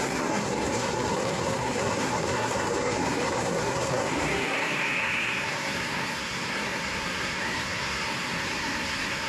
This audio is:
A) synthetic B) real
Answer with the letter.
A